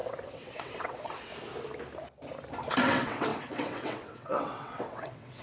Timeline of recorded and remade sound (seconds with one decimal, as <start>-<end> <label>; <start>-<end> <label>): 0.0-1.3 remade; 1.3-2.8 recorded; 2.8-5.4 remade